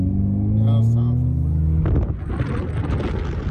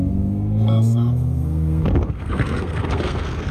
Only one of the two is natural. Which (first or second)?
first